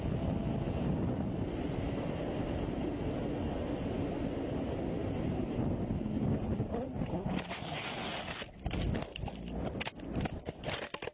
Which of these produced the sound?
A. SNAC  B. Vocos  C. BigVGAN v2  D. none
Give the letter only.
D